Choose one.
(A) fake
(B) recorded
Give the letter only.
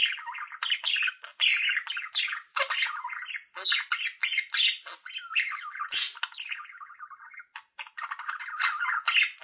B